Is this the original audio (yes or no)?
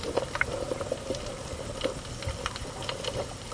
yes